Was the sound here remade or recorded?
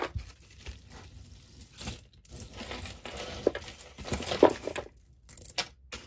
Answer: recorded